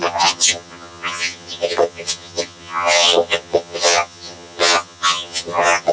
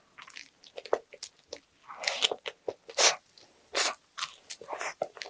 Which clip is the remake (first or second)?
first